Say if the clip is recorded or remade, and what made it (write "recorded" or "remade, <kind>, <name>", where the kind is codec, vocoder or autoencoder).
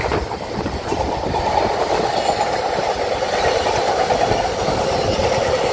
recorded